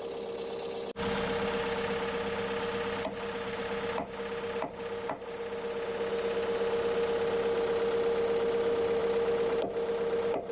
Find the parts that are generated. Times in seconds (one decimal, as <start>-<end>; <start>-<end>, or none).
none